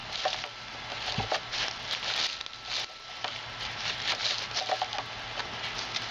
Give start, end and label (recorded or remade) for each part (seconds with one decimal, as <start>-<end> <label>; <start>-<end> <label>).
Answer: 0.0-6.1 recorded